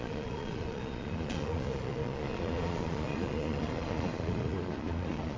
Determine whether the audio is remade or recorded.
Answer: remade